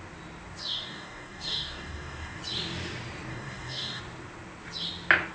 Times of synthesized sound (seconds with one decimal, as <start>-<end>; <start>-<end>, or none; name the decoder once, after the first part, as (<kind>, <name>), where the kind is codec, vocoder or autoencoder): 0.6-2.4 (codec, DAC); 3.3-4.0